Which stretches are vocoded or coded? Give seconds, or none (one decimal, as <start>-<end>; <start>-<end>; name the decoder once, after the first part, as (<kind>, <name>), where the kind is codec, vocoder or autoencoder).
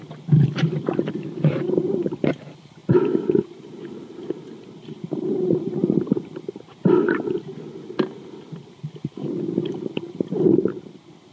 0.0-2.8 (vocoder, BigVGAN v2); 5.0-11.3